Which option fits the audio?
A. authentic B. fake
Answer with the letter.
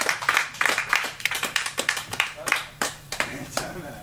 B